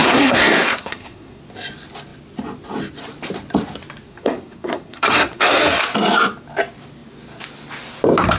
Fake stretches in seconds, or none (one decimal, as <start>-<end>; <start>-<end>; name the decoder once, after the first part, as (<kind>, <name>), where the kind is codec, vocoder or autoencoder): 0.0-1.4 (codec, SNAC); 4.1-5.6